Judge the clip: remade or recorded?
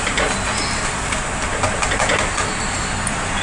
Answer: recorded